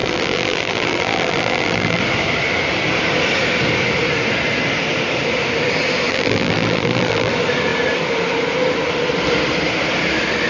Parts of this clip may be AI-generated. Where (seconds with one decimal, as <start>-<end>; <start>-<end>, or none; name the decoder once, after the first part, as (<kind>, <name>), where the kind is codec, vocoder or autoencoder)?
0.0-2.0 (vocoder, BigVGAN v2); 6.1-7.3